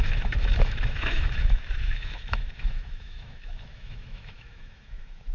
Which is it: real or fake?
fake